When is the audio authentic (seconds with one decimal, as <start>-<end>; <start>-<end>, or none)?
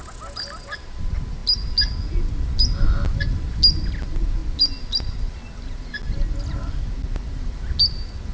0.0-8.3